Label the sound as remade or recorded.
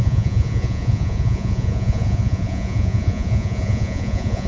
remade